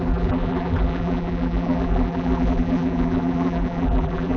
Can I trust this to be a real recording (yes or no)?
no